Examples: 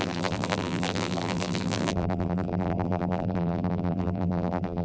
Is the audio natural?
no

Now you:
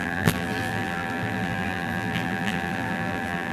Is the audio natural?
no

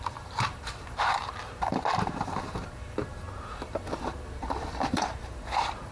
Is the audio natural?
no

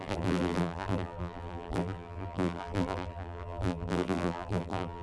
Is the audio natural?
no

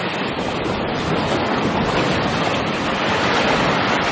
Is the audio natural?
yes